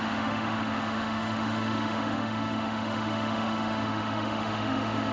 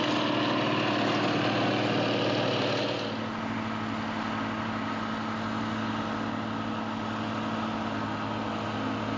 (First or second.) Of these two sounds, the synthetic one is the first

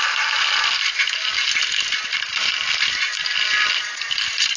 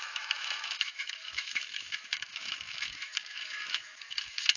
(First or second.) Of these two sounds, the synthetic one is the second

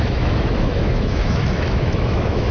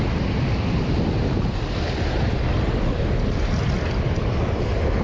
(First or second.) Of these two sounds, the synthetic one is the first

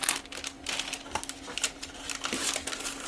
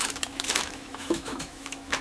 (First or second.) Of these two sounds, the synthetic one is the second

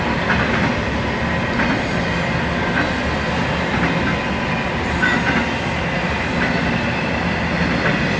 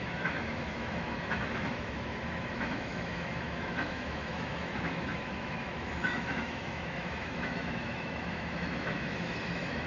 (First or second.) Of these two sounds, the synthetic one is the second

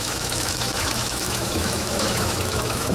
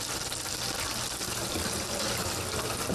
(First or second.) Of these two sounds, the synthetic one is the first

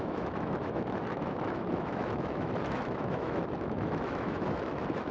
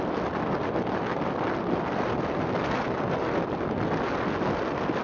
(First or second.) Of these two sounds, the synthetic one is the first